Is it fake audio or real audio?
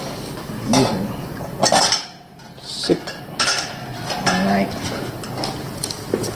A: real